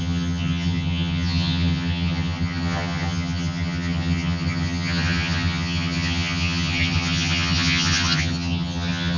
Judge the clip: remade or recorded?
remade